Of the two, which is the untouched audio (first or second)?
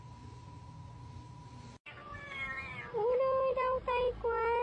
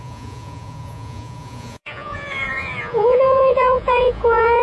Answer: first